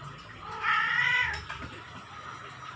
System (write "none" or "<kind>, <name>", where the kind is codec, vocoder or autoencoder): none